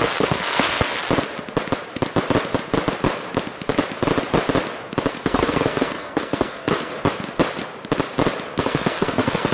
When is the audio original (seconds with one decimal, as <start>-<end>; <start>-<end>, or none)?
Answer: 1.0-5.1; 6.9-8.6